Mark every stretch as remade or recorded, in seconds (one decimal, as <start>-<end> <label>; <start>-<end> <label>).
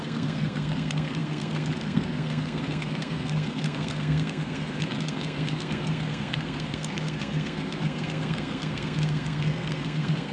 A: 0.0-10.3 remade